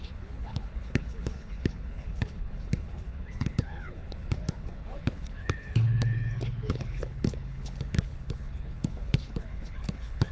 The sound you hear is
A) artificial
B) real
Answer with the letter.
A